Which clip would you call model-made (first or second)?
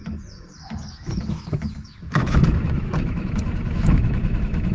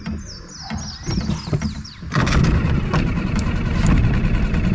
first